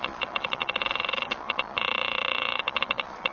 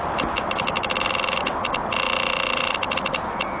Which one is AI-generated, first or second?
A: first